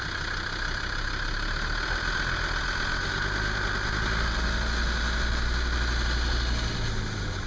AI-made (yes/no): no